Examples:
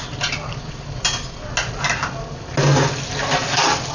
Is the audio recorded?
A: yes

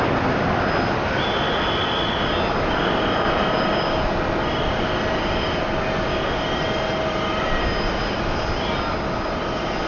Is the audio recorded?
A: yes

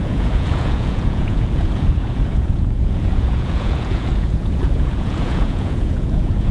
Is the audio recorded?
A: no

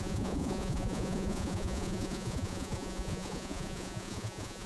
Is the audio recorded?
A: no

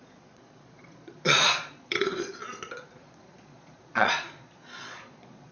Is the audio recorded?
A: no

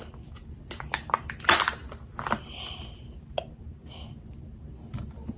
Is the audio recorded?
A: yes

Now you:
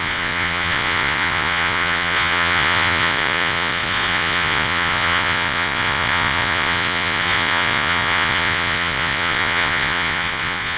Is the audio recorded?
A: no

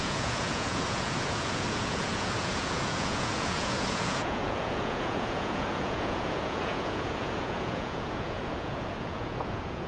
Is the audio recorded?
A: no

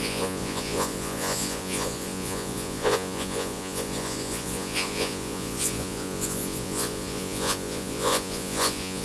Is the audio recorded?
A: no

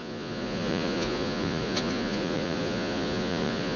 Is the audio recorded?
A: no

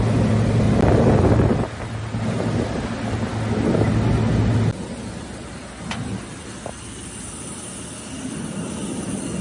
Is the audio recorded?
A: yes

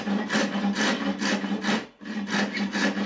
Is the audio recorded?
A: yes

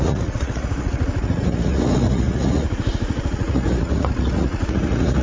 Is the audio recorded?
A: no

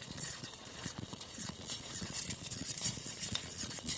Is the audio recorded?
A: no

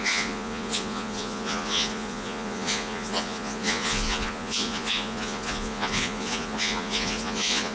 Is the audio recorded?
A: no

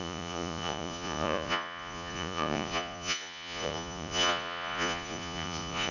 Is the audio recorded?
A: no